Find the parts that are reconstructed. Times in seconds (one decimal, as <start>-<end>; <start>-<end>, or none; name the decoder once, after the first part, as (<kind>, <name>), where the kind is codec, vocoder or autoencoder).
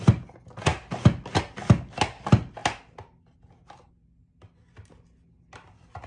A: none